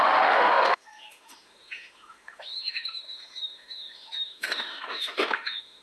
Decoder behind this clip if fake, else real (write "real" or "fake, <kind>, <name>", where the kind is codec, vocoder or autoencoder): fake, autoencoder, DAC-VAE